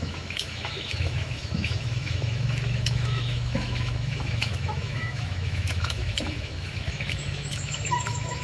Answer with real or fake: fake